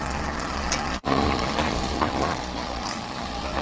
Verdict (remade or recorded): remade